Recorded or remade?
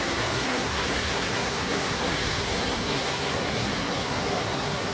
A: remade